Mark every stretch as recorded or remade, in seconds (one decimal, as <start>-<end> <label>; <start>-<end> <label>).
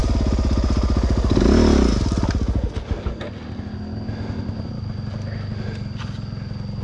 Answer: 0.0-6.8 recorded